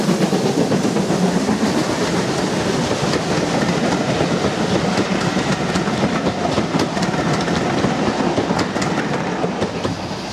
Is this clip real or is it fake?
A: real